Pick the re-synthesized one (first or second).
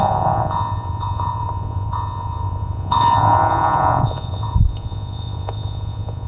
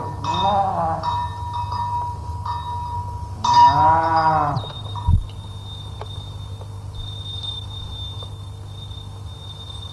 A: first